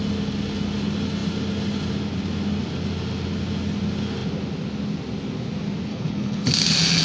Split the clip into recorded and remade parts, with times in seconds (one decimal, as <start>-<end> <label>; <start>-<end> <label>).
0.0-5.9 recorded; 5.9-6.5 remade; 6.5-7.0 recorded